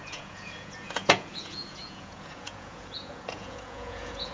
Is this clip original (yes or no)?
no